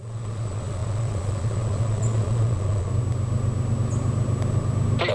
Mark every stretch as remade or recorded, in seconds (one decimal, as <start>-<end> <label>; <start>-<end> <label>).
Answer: 0.0-2.9 remade; 2.9-5.1 recorded